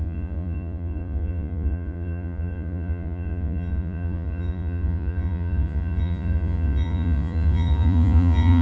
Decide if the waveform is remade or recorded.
remade